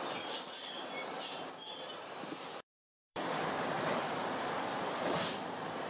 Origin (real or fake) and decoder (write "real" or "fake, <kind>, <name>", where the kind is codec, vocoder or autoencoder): fake, vocoder, BigVGAN v2